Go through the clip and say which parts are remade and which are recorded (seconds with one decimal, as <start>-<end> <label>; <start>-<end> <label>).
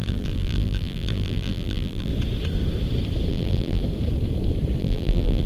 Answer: 0.0-2.1 remade; 2.1-3.3 recorded; 3.3-3.8 remade; 3.8-4.8 recorded; 4.8-5.5 remade